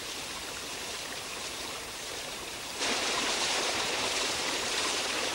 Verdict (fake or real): fake